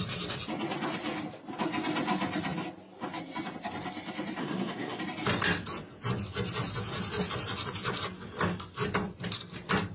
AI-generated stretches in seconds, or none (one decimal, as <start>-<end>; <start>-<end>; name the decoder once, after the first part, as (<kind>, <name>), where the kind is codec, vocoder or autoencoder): 4.4-5.0 (codec, SNAC)